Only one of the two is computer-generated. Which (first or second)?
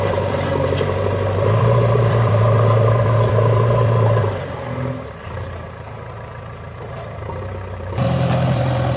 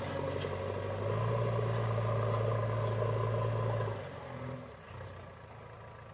first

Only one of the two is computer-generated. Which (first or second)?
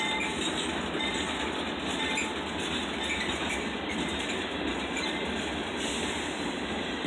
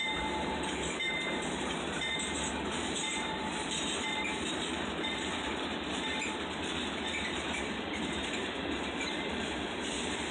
second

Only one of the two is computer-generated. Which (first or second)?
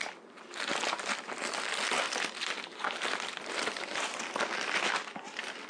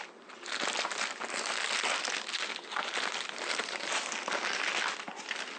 first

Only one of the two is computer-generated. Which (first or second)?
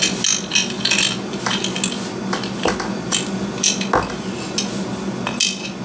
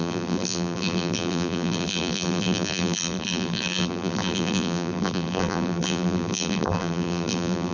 second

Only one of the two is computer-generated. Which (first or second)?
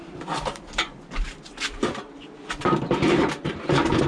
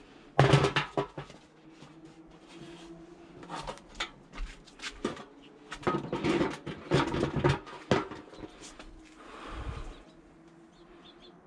first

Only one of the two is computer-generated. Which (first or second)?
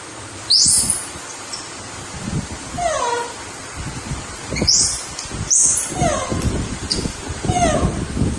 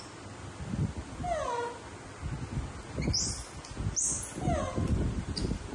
first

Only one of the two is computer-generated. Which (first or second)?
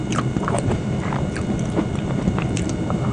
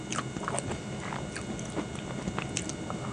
first